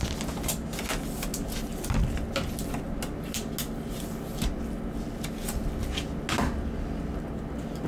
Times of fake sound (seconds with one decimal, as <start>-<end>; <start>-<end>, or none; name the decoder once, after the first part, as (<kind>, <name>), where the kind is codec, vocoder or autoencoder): none